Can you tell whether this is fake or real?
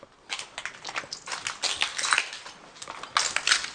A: real